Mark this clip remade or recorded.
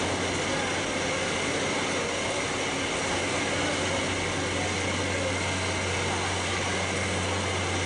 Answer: recorded